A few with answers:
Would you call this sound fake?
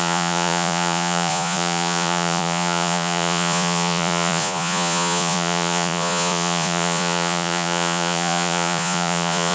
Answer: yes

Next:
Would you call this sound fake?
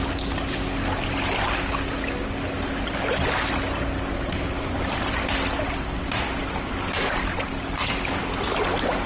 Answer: no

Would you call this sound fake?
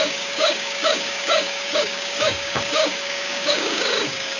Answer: yes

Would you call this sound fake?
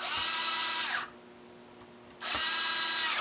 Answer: no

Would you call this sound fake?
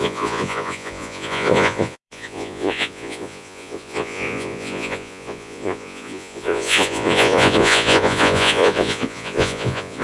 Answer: yes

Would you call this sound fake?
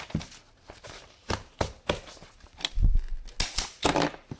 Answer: no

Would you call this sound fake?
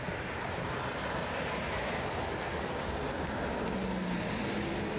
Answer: no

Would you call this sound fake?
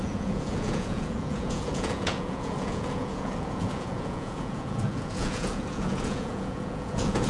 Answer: yes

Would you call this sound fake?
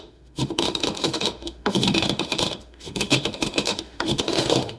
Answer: yes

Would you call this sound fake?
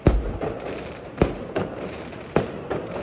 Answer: yes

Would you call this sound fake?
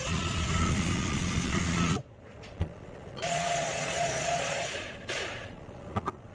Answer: yes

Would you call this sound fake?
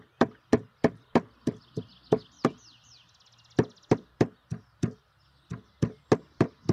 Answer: no